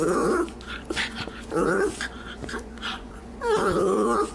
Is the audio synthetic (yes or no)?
yes